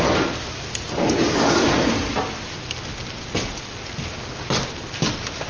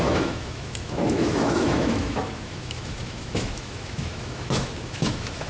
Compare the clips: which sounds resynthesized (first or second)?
second